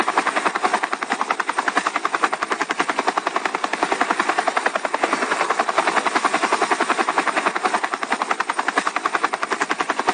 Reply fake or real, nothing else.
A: real